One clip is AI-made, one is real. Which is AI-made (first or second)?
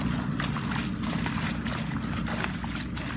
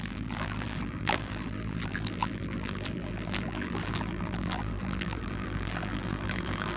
second